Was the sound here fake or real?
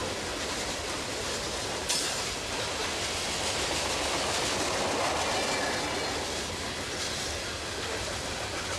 real